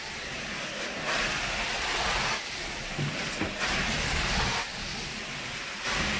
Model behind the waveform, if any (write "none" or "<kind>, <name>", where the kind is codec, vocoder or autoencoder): none